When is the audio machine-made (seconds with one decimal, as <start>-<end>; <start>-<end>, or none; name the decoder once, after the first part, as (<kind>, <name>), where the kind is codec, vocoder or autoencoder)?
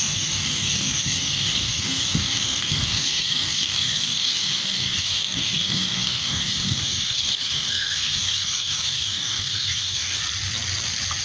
0.0-10.2 (codec, DAC)